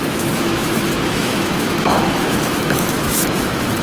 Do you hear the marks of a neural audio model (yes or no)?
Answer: yes